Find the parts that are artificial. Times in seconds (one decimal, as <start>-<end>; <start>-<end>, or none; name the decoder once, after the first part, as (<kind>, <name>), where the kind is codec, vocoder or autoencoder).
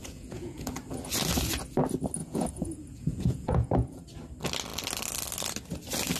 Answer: 0.0-0.7 (vocoder, Vocos); 2.2-4.0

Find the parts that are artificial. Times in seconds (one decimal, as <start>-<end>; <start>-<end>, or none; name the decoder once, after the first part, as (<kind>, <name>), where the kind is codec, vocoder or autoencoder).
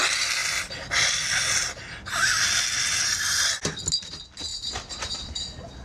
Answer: none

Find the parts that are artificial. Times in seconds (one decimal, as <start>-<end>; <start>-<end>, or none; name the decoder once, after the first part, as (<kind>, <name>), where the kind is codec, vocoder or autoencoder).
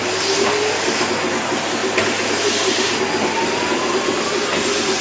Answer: none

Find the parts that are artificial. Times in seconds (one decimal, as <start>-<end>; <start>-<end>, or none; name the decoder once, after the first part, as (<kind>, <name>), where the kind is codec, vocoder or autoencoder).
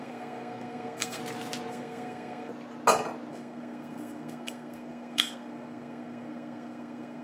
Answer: 0.0-1.2 (codec, SNAC); 1.7-2.5; 3.3-7.2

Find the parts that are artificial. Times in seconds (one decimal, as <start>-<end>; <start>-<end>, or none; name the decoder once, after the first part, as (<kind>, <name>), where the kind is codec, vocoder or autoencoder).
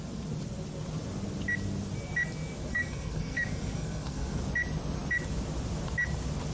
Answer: 2.7-4.4 (codec, SNAC)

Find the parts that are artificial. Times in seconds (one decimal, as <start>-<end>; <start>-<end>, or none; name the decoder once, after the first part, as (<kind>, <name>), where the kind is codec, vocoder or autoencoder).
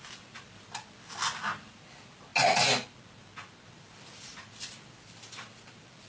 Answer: none